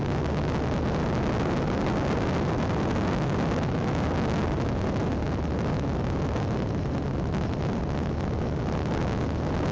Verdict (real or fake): real